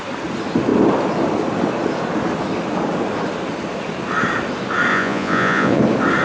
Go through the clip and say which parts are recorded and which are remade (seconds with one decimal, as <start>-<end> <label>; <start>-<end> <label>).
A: 0.0-4.9 recorded; 4.9-5.8 remade; 5.8-6.2 recorded